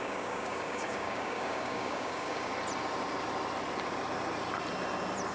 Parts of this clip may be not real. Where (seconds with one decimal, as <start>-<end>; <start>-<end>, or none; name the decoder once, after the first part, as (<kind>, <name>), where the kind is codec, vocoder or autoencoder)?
0.0-2.5 (codec, DAC)